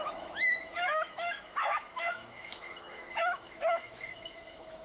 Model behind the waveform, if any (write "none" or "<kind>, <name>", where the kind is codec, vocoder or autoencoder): autoencoder, DAC-VAE